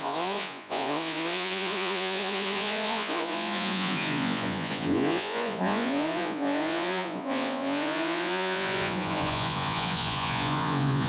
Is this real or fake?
fake